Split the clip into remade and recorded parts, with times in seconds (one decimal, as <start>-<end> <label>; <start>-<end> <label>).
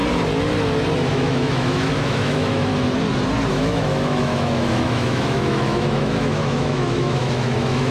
0.0-1.1 recorded; 1.1-2.7 remade; 2.7-3.5 recorded; 3.5-7.9 remade